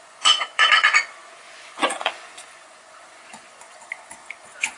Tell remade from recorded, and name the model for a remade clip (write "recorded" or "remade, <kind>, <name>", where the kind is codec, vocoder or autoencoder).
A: remade, vocoder, Vocos